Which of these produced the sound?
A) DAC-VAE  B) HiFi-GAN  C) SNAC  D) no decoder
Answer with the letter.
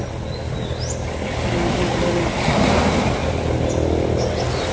D